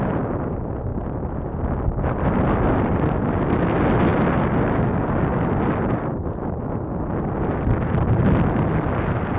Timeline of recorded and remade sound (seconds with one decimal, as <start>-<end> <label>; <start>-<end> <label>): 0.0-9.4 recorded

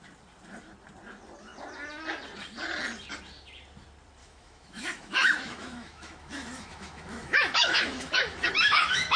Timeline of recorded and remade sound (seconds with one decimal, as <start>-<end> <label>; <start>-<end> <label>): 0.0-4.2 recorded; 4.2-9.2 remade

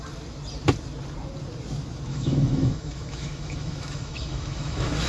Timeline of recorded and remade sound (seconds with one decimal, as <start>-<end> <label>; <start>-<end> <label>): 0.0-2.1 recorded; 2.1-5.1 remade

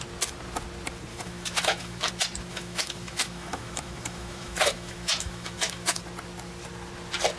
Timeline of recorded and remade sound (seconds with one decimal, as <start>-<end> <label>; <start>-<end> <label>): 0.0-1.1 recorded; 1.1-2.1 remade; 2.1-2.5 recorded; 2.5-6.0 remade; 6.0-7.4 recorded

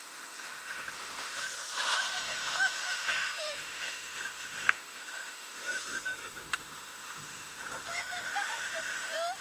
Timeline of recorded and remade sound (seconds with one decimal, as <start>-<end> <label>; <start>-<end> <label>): 0.0-9.4 remade

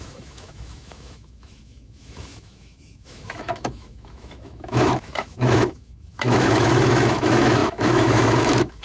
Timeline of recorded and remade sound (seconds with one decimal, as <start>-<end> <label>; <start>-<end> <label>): 0.0-8.8 remade